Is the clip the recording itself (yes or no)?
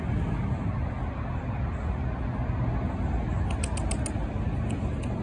yes